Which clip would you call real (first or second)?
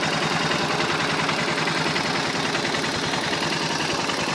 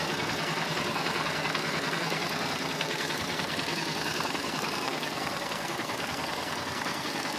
first